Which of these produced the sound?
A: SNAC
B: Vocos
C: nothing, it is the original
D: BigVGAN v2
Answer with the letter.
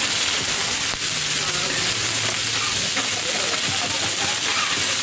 C